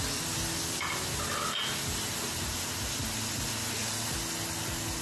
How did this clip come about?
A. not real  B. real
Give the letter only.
B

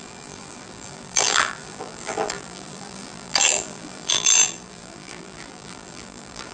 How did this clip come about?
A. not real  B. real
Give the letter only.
A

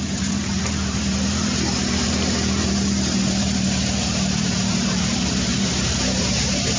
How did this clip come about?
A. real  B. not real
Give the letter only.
B